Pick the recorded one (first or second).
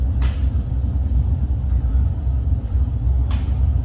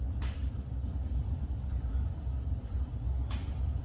first